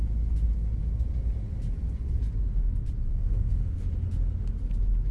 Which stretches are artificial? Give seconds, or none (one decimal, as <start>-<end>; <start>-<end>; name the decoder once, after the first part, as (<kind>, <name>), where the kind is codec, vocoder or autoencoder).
3.1-3.8 (codec, SNAC)